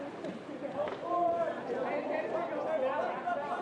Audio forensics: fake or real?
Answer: real